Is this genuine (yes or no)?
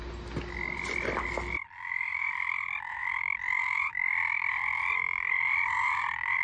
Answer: yes